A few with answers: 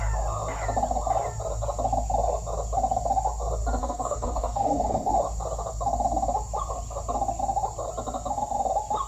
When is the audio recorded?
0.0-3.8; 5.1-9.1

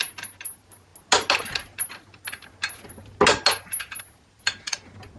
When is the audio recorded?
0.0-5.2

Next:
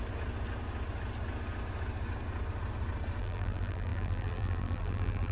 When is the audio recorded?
0.0-3.2

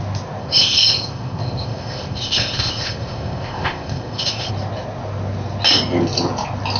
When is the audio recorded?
0.0-0.4; 4.5-6.8

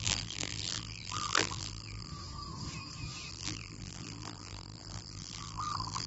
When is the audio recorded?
2.1-3.3

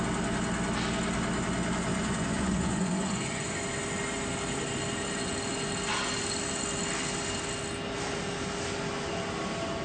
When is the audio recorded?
0.0-1.9; 3.6-9.8

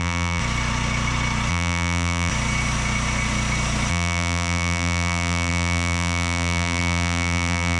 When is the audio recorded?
0.4-1.5; 2.3-3.9